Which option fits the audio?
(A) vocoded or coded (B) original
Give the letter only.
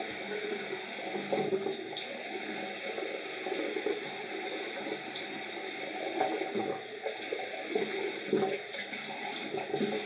B